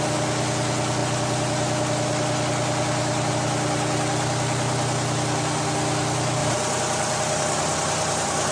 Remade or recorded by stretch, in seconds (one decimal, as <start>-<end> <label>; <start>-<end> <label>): 0.0-6.4 recorded; 6.4-8.5 remade

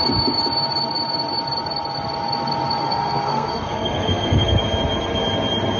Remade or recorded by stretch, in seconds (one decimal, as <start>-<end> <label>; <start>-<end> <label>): 0.0-2.8 recorded; 2.8-4.6 remade; 4.6-5.8 recorded